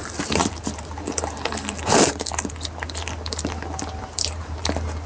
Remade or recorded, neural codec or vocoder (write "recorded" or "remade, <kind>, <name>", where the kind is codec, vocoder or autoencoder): remade, vocoder, BigVGAN v2